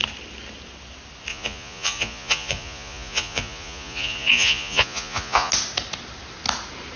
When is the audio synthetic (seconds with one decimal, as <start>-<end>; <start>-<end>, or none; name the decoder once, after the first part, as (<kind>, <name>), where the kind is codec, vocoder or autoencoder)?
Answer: 1.3-5.5 (vocoder, Vocos)